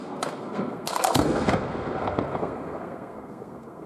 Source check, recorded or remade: remade